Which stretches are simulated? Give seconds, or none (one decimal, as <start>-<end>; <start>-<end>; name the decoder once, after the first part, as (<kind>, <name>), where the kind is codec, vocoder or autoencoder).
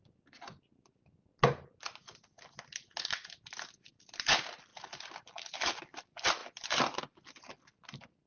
none